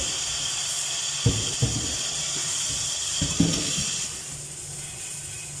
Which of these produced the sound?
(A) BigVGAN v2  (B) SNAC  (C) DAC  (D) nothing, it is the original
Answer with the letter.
D